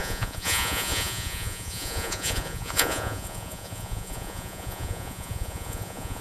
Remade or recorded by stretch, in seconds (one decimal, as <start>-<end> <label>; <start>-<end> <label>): 0.0-6.2 remade